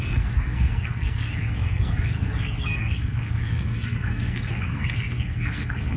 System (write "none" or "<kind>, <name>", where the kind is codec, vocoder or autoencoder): codec, SNAC